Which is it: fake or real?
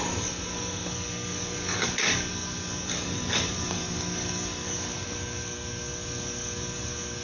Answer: fake